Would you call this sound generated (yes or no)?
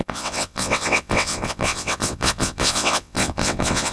yes